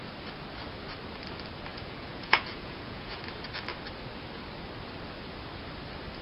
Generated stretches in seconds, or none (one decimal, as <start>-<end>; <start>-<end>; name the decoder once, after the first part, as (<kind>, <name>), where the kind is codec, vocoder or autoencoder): 1.7-3.2 (vocoder, Vocos)